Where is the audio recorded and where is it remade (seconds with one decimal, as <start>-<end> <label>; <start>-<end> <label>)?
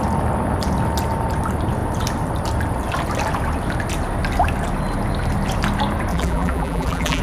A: 0.0-6.1 recorded; 6.1-7.2 remade